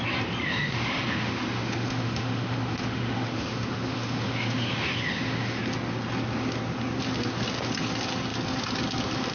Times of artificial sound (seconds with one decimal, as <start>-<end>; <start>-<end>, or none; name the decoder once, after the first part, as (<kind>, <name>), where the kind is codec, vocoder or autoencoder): 0.4-5.6 (autoencoder, DAC-VAE)